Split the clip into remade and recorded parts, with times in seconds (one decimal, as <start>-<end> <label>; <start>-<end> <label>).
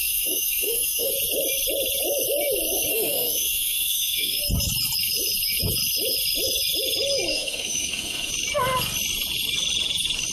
0.0-1.1 remade; 1.1-2.9 recorded; 2.9-4.4 remade; 4.4-7.3 recorded; 7.3-8.3 remade; 8.3-10.3 recorded